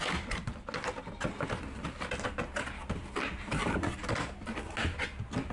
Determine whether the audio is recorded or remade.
recorded